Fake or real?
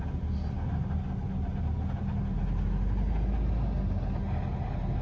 real